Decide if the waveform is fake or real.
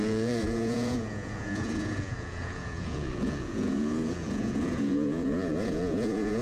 fake